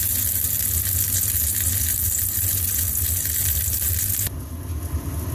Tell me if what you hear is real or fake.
real